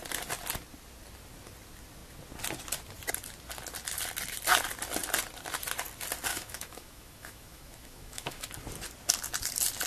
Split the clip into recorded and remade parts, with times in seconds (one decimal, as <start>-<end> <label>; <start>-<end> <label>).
0.0-6.3 recorded; 6.3-8.5 remade; 8.5-9.9 recorded